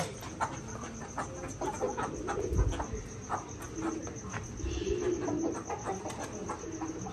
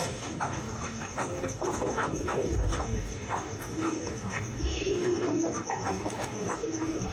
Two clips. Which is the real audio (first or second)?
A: first